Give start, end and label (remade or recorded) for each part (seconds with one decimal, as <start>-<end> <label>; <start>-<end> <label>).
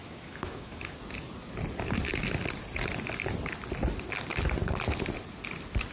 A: 0.0-0.8 remade; 0.8-5.9 recorded